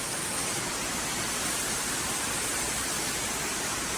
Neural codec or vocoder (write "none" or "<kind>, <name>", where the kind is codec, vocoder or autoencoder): none